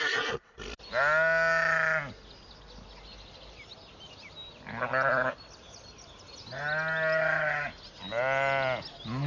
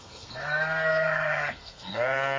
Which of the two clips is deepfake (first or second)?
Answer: second